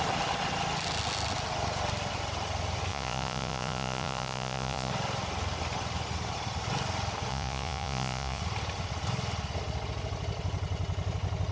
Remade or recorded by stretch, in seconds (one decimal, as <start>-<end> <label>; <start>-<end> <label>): 0.0-2.9 recorded; 2.9-4.9 remade; 4.9-7.3 recorded; 7.3-8.4 remade; 8.4-11.5 recorded